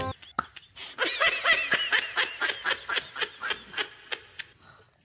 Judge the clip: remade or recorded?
recorded